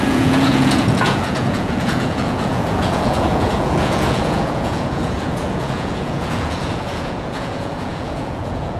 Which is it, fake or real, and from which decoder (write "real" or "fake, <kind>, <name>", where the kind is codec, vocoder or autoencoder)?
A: fake, vocoder, Vocos